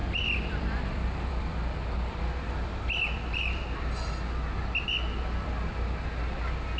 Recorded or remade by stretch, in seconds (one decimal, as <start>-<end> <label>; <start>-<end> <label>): 0.0-4.1 remade; 4.1-6.8 recorded